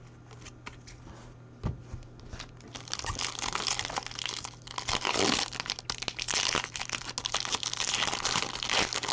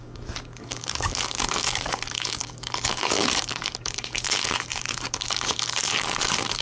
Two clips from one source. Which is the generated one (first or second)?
second